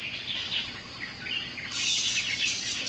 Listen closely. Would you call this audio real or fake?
real